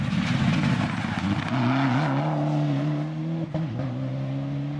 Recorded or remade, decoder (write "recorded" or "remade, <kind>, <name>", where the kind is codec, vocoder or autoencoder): recorded